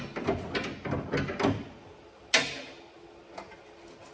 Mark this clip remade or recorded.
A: recorded